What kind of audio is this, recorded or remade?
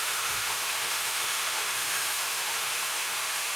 remade